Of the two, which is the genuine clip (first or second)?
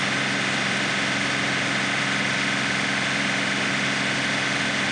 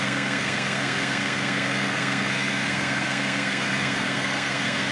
first